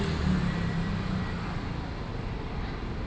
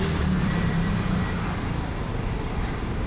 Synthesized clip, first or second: second